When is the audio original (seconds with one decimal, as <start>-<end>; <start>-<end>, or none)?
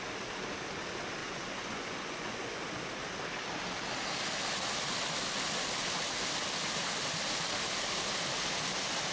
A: 0.0-1.2; 2.6-9.1